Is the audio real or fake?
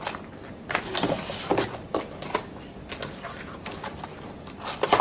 real